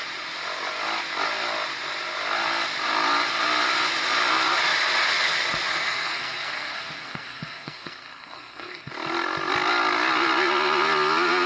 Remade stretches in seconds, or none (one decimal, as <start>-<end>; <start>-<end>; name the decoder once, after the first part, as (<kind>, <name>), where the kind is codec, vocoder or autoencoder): 5.7-8.9 (codec, SNAC)